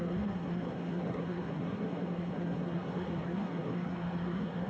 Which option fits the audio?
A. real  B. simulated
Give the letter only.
B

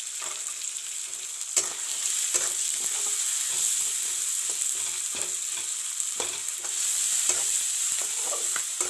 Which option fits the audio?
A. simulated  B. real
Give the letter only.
B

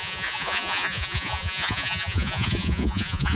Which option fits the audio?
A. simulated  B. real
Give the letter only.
A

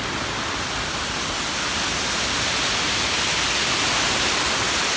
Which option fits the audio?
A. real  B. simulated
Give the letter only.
A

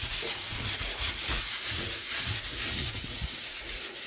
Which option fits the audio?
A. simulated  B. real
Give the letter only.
A